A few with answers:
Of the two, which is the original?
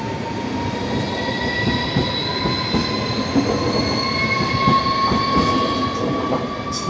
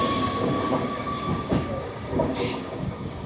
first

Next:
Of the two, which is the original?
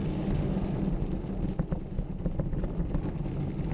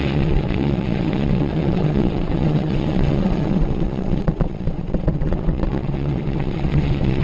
first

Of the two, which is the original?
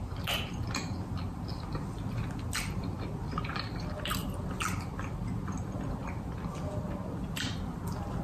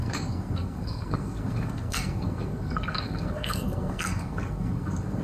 first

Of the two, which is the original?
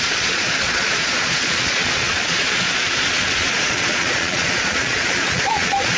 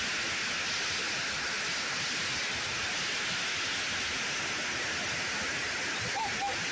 second